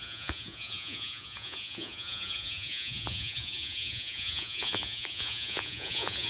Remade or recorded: remade